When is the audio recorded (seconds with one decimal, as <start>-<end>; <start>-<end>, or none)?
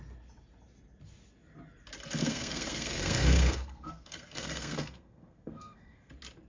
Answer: 0.0-2.2; 6.1-6.5